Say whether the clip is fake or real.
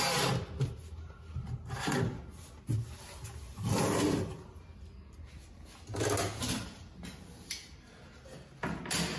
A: real